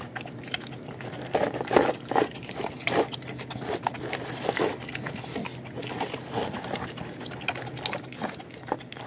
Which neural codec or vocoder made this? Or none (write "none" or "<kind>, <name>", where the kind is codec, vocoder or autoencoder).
none